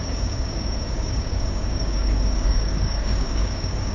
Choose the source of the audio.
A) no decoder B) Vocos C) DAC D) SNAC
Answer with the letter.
C